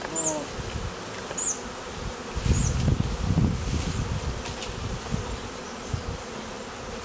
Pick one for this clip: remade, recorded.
recorded